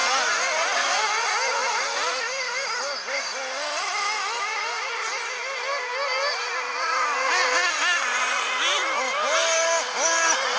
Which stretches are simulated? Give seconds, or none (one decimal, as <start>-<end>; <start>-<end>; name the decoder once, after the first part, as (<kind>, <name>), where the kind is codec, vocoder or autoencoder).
none